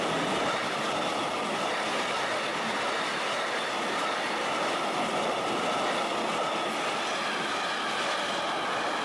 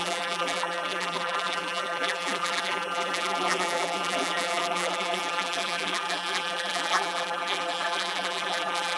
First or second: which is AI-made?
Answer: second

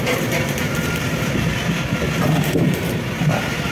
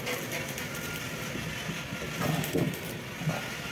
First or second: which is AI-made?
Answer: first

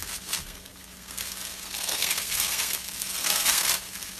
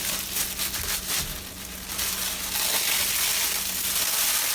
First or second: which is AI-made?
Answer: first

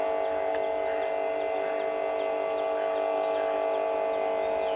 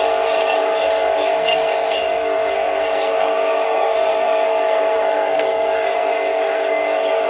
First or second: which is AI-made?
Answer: second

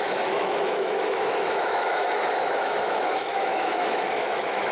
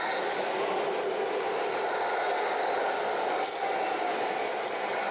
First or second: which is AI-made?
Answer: first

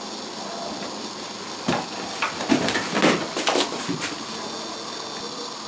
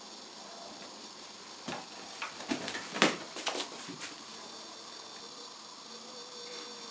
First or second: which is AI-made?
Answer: second